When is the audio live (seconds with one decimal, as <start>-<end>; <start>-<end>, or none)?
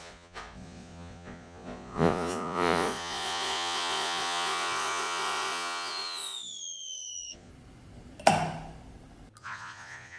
7.5-9.4